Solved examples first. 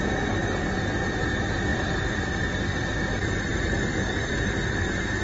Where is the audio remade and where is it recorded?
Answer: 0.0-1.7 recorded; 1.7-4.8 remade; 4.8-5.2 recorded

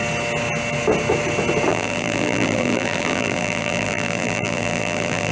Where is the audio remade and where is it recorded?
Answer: 0.0-1.7 recorded; 1.7-5.3 remade

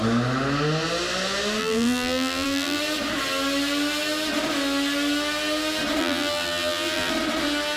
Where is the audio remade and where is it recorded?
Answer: 0.0-1.6 recorded; 1.6-2.8 remade; 2.8-6.0 recorded; 6.0-7.1 remade; 7.1-7.8 recorded